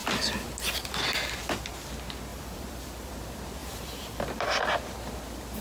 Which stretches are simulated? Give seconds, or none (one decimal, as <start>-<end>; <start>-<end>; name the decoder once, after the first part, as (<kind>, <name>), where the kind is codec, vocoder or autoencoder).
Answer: 2.3-3.1 (vocoder, BigVGAN v2); 3.6-4.3